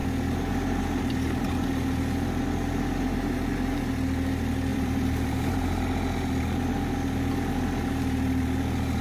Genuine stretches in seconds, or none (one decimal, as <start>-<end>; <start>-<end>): 0.0-4.7; 5.8-9.0